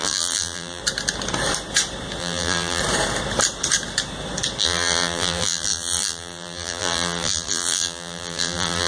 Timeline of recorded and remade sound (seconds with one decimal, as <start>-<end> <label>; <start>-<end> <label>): 0.0-0.8 remade; 0.8-2.2 recorded; 2.2-2.8 remade; 2.8-4.6 recorded; 4.6-8.9 remade